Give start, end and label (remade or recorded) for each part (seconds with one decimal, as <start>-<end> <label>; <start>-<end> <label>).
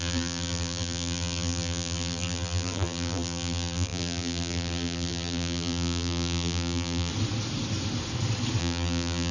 0.0-7.1 remade; 7.1-8.6 recorded; 8.6-9.3 remade